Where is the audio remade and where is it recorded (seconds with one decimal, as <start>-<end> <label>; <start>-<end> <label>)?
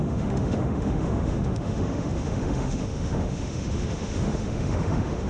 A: 0.0-5.3 remade